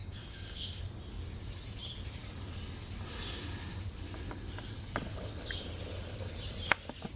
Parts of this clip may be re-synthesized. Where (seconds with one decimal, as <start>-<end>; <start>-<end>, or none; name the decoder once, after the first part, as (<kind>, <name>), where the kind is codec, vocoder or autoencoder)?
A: 0.0-0.8 (codec, DAC)